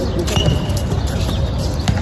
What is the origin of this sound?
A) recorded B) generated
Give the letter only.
A